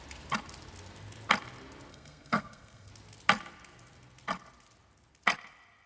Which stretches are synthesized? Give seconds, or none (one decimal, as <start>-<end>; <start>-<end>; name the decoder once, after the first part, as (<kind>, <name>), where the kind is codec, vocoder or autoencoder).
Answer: 1.9-2.9 (codec, SNAC)